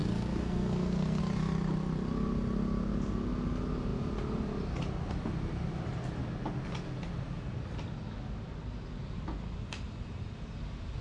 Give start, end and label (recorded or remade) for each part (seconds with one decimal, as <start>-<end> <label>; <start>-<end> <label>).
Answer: 0.0-1.2 remade; 1.2-11.0 recorded